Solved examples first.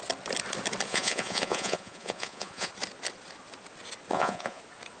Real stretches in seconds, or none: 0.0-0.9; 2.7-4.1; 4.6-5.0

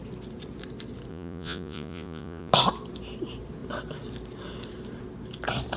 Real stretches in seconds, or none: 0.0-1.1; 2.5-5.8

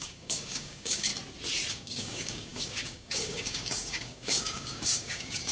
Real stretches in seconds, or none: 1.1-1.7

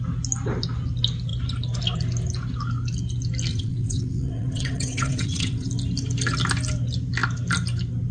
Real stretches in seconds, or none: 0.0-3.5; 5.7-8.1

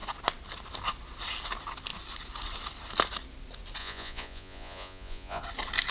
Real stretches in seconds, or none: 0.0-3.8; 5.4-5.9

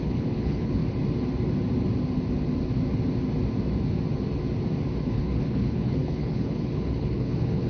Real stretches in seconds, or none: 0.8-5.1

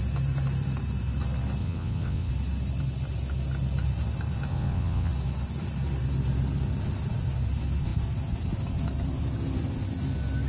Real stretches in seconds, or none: 0.0-1.6; 2.3-4.5; 5.1-10.5

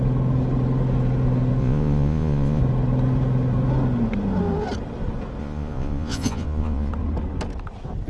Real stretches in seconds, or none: 0.0-1.6; 2.6-5.4; 6.9-8.1